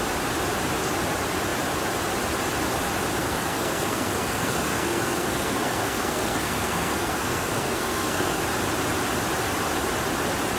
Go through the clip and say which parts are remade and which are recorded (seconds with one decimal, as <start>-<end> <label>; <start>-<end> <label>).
0.0-3.2 recorded; 3.2-8.4 remade; 8.4-10.6 recorded